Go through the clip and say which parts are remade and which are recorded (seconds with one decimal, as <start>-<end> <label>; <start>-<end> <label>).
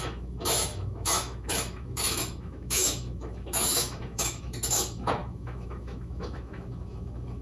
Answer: 0.0-7.4 remade